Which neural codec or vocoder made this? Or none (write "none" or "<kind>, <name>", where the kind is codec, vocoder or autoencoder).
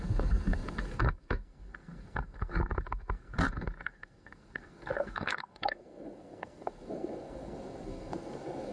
codec, SNAC